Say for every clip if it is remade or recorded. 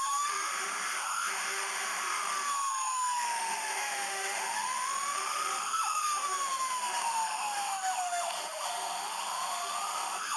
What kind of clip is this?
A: remade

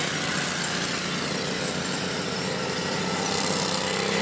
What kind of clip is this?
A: recorded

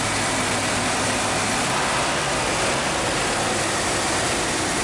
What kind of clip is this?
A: recorded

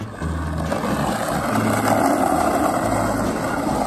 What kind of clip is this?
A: recorded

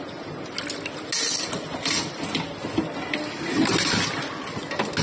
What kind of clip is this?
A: recorded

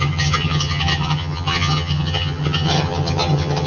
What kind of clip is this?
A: remade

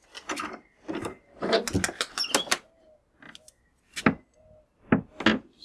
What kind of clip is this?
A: recorded